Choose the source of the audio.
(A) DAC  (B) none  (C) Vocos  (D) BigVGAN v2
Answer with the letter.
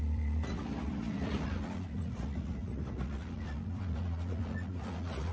C